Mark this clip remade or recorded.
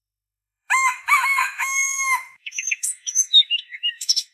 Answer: remade